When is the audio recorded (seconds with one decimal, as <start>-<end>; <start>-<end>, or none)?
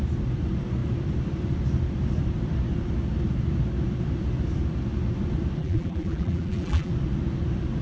0.0-5.6; 6.9-7.8